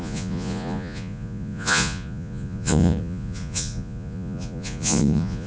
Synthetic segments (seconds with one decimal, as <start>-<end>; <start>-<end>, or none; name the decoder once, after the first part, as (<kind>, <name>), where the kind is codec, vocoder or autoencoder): 0.0-5.5 (vocoder, Vocos)

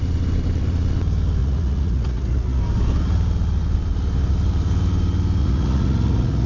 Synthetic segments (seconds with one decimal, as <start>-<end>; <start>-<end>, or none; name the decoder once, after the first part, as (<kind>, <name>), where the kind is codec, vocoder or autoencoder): 1.4-2.6 (vocoder, Vocos); 5.4-6.5

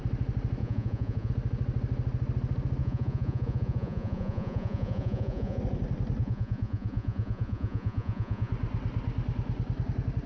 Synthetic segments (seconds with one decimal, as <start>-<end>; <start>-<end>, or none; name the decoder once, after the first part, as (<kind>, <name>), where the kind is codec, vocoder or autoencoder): 0.6-1.3 (vocoder, Vocos); 2.8-5.6; 6.2-8.5

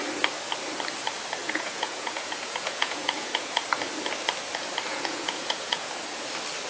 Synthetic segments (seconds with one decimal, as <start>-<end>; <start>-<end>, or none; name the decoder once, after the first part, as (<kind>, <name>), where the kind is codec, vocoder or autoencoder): 1.4-3.6 (vocoder, Vocos); 4.9-5.9

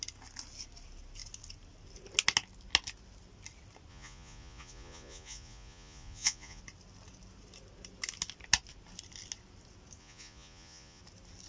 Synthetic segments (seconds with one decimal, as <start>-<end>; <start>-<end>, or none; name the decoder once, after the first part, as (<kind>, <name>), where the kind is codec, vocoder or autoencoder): 3.9-6.6 (vocoder, Vocos); 10.0-11.0

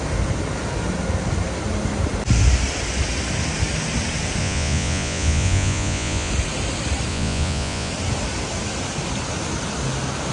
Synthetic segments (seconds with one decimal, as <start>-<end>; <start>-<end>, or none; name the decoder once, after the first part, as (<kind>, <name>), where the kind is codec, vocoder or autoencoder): 4.4-6.3 (vocoder, Vocos); 7.1-7.9